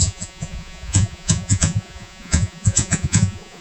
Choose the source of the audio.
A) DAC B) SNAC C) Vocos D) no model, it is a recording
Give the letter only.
C